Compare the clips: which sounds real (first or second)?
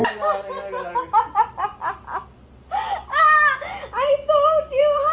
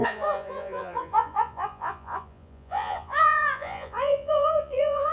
first